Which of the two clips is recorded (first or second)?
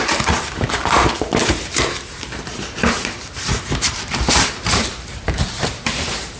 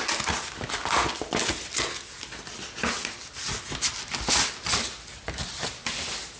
second